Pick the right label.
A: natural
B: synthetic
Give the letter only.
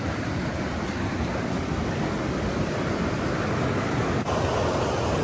A